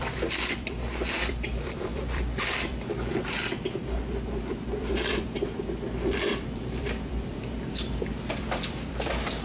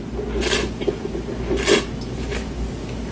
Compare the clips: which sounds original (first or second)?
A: second